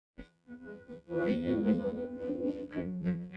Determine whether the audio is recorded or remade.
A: remade